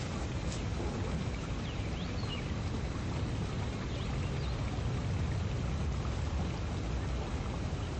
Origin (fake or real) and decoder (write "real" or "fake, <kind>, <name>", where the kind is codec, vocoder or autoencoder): real